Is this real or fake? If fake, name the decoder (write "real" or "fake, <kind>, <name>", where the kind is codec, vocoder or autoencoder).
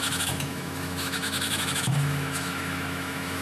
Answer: fake, autoencoder, DAC-VAE